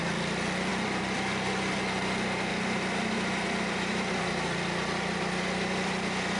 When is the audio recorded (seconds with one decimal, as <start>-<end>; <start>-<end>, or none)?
0.0-0.7; 1.8-2.5